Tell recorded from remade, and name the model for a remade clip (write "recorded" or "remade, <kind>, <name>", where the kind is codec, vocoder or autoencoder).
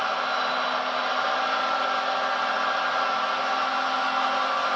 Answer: recorded